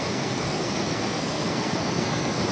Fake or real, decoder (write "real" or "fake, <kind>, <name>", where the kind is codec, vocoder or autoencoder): fake, codec, SNAC